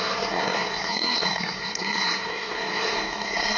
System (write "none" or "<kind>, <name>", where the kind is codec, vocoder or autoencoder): codec, SNAC